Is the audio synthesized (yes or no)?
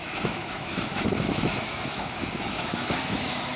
yes